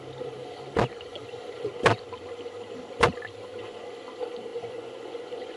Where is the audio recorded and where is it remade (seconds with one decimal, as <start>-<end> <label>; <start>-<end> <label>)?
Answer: 0.0-1.1 recorded; 1.1-1.7 remade; 1.7-4.5 recorded; 4.5-5.6 remade